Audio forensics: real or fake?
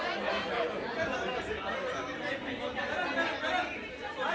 real